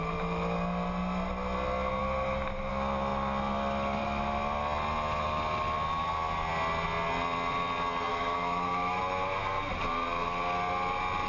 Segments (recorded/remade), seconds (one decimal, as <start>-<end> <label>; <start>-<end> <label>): 0.0-8.1 recorded; 8.1-9.0 remade; 9.0-11.3 recorded